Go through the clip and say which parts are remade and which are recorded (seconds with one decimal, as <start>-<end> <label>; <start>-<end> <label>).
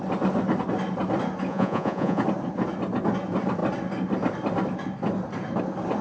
0.0-1.5 recorded; 1.5-2.2 remade; 2.2-6.0 recorded